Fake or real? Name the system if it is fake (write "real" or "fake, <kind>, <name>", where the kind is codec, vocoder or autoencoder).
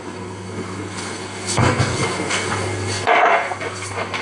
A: fake, codec, SNAC